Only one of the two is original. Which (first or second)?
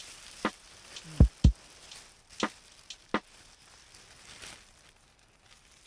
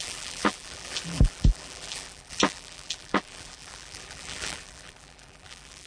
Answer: first